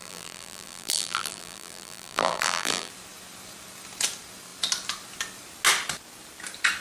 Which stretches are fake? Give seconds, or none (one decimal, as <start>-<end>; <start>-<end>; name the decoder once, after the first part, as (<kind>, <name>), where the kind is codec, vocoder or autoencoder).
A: 0.0-2.9 (vocoder, BigVGAN v2)